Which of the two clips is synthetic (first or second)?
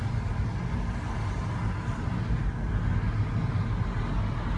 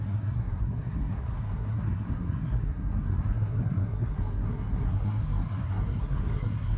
second